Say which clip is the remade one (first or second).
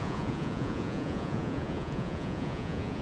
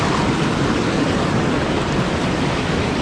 first